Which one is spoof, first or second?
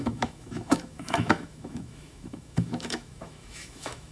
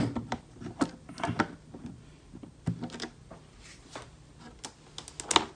first